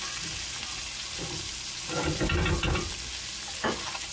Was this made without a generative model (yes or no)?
yes